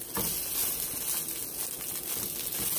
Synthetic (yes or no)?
no